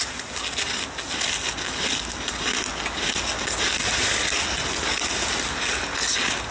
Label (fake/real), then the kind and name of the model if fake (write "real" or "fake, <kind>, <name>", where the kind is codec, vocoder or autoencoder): real